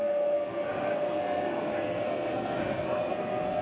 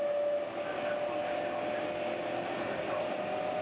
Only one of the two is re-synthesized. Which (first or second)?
first